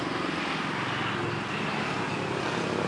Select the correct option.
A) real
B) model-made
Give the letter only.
A